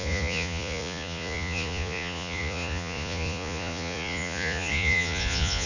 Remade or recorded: remade